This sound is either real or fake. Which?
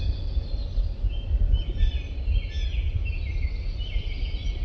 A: real